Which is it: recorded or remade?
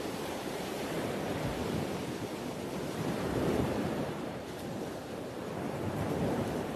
remade